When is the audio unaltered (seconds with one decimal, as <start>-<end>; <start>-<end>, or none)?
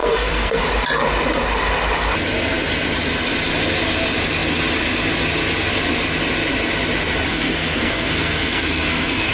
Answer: 0.6-7.3